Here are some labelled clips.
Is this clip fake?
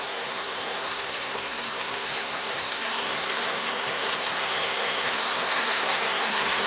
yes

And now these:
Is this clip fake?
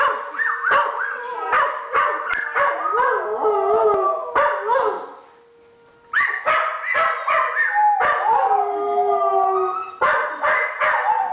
no